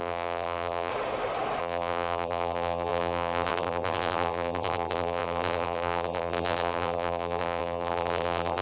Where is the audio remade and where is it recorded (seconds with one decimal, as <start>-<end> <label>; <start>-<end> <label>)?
0.0-0.9 remade; 0.9-1.6 recorded; 1.6-8.6 remade